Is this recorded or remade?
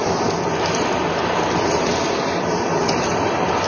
recorded